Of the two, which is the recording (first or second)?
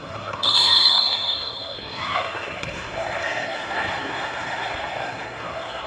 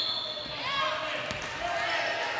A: second